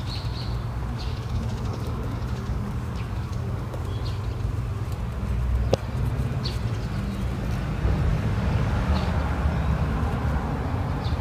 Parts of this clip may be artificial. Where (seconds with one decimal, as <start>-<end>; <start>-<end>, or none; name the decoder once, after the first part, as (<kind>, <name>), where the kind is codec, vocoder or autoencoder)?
0.8-3.8 (codec, DAC); 8.1-9.1